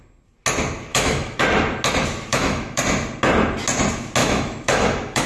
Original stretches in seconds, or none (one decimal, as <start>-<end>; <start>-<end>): 0.0-0.9; 1.4-2.3; 2.8-4.2